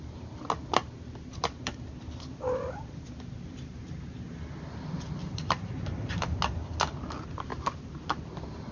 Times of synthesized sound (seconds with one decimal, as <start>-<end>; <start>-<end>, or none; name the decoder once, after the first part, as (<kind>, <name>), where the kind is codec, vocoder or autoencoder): 1.4-3.7 (vocoder, BigVGAN v2); 5.2-6.4; 7.5-8.7